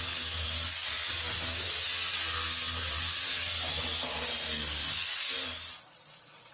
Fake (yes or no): no